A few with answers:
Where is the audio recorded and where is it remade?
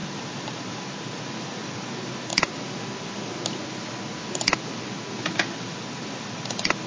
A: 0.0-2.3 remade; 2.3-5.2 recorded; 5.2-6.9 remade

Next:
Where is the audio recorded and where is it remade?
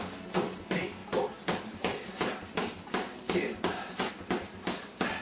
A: 0.0-1.0 recorded; 1.0-4.1 remade; 4.1-5.2 recorded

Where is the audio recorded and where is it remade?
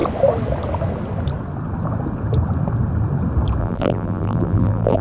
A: 0.0-3.6 recorded; 3.6-5.0 remade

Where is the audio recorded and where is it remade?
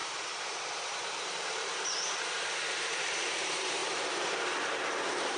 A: 0.0-3.8 remade; 3.8-5.0 recorded; 5.0-5.4 remade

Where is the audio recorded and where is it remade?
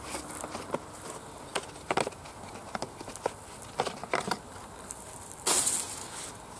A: 0.0-6.6 recorded